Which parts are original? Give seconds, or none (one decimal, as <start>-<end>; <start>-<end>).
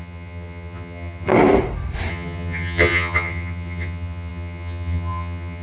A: 1.3-2.1